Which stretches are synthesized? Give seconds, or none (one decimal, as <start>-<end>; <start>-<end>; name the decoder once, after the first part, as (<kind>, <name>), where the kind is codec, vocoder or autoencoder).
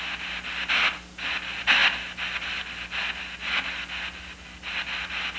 none